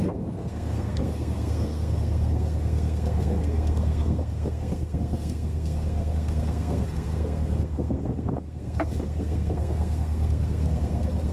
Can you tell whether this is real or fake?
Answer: fake